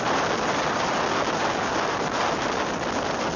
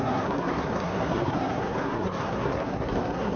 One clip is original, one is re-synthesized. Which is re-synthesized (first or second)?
second